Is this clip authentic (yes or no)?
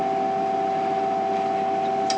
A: yes